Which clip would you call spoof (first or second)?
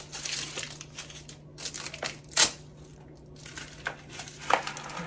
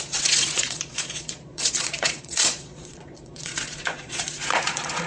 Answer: second